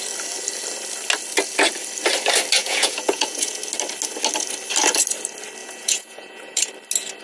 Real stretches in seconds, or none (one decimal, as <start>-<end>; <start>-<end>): 0.0-2.6; 3.6-5.6; 6.7-7.2